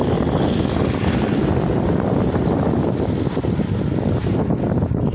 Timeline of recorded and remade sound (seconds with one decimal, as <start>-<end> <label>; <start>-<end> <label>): 0.0-5.1 recorded